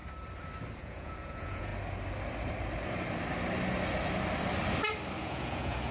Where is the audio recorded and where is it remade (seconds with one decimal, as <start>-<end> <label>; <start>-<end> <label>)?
0.0-0.8 recorded; 0.8-1.7 remade; 1.7-5.2 recorded; 5.2-5.9 remade